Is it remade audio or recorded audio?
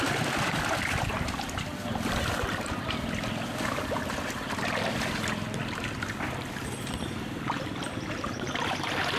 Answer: recorded